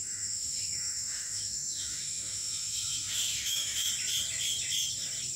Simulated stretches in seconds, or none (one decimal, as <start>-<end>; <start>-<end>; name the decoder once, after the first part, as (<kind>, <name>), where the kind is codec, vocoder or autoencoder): 0.0-3.9 (autoencoder, DAC-VAE)